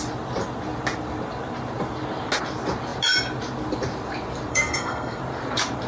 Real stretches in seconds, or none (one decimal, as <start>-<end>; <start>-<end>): 0.0-4.5; 5.2-5.9